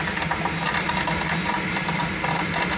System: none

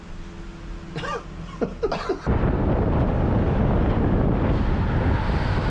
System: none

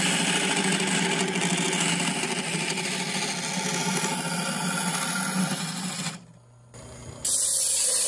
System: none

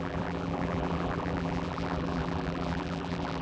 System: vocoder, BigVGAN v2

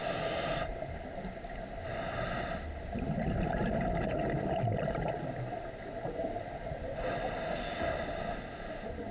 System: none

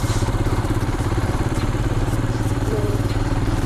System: vocoder, BigVGAN v2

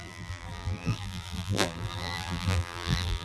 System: vocoder, BigVGAN v2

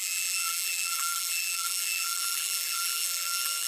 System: vocoder, BigVGAN v2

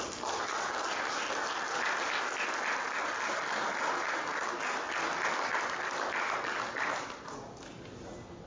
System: none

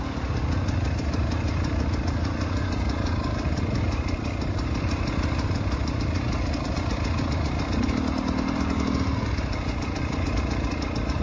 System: none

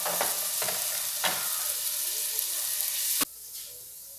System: none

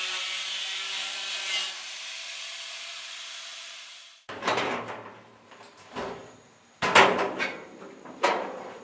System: vocoder, BigVGAN v2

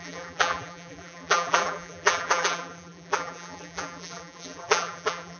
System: vocoder, BigVGAN v2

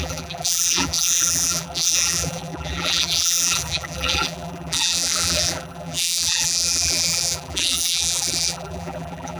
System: vocoder, BigVGAN v2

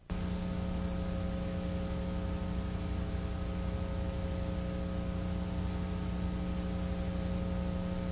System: none